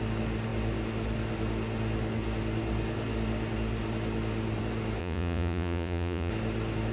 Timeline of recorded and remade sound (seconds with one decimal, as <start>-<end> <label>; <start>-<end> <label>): 0.0-5.0 recorded; 5.0-6.3 remade; 6.3-6.9 recorded

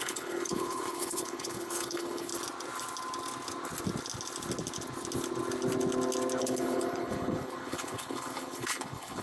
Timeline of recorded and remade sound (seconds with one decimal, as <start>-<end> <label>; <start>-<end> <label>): 0.0-2.3 remade; 2.3-6.4 recorded; 6.4-9.2 remade

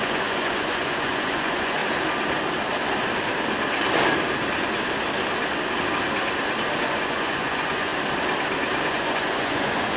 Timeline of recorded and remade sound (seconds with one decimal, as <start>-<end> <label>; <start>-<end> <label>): 0.0-1.8 remade; 1.8-6.8 recorded; 6.8-7.9 remade; 7.9-8.9 recorded; 8.9-10.0 remade

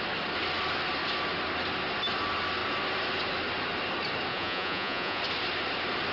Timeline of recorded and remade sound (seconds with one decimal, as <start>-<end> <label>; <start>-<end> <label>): 0.0-4.3 recorded; 4.3-5.2 remade; 5.2-6.1 recorded

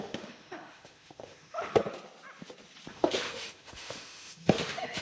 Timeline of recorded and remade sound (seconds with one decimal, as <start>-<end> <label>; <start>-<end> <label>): 0.0-1.7 remade; 1.7-2.9 recorded; 2.9-5.0 remade

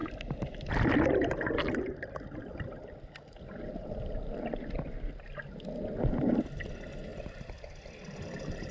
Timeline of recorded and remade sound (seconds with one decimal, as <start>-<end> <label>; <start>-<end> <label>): 0.0-0.9 remade; 0.9-7.1 recorded; 7.1-8.7 remade